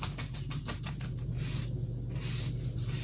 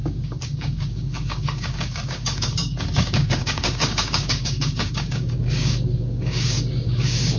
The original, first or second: first